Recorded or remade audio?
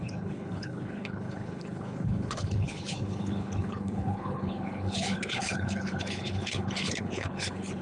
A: remade